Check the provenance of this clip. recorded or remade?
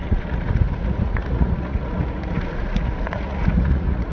remade